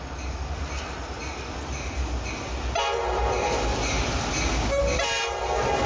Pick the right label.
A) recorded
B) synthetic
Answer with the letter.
A